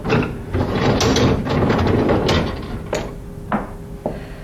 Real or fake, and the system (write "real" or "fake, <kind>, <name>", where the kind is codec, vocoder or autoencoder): real